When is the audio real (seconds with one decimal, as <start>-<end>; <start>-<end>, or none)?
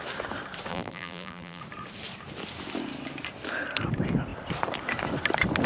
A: 0.0-0.7; 1.6-5.7